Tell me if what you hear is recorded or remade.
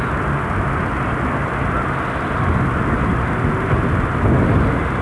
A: recorded